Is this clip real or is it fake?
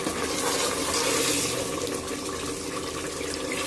real